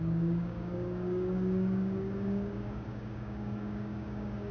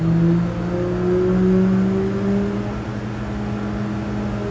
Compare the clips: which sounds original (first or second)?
second